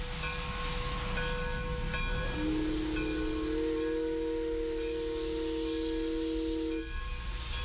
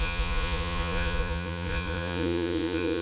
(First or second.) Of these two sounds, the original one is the first